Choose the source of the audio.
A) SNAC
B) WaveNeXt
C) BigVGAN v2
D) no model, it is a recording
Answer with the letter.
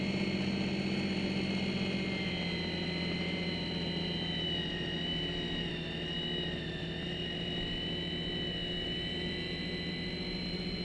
D